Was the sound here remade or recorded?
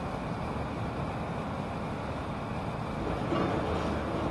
recorded